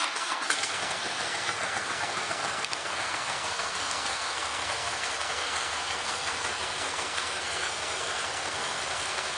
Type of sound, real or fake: fake